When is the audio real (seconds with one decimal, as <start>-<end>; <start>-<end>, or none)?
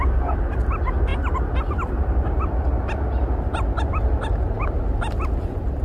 0.0-5.8